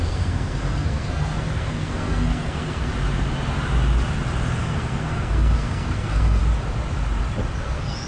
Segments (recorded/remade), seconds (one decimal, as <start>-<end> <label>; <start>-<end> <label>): 0.0-2.9 remade; 2.9-4.6 recorded; 4.6-6.4 remade; 6.4-7.6 recorded; 7.6-8.1 remade